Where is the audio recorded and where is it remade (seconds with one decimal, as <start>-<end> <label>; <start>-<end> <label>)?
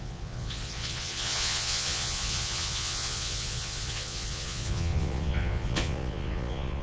0.0-6.8 remade